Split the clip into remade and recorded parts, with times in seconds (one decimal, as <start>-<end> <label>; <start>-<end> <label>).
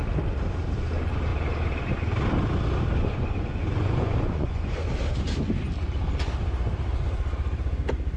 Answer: 0.0-3.0 recorded; 3.0-4.9 remade; 4.9-8.2 recorded